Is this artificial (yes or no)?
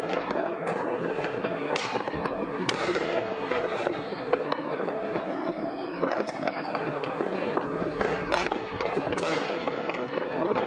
yes